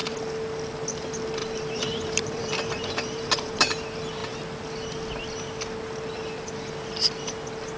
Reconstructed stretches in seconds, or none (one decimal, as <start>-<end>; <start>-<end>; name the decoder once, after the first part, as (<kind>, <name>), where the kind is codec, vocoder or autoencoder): 1.4-3.8 (vocoder, BigVGAN v2)